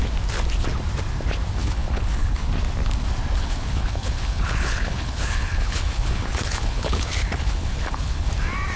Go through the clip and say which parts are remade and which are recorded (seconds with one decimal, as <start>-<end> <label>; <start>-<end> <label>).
0.0-1.6 recorded; 1.6-2.5 remade; 2.5-3.4 recorded; 3.4-8.3 remade; 8.3-8.8 recorded